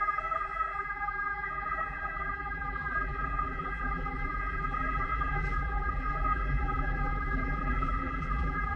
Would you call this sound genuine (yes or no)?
no